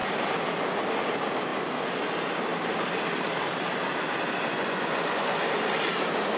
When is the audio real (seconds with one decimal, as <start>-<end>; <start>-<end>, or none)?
0.0-4.5; 5.4-6.4